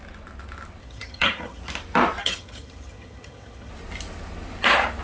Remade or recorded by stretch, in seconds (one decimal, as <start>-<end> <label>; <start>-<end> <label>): 0.0-0.8 recorded; 0.8-1.6 remade; 1.6-2.2 recorded; 2.2-3.7 remade; 3.7-5.0 recorded